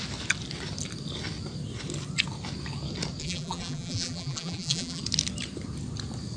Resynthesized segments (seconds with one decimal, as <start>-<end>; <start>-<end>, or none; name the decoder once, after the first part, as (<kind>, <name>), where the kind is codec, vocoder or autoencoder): 3.2-5.0 (vocoder, BigVGAN v2)